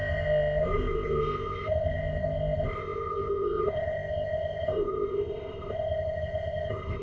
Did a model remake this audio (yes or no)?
yes